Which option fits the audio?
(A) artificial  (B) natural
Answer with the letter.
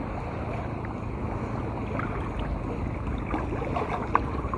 B